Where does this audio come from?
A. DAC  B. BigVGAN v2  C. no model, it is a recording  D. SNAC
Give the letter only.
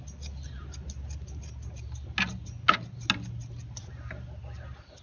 C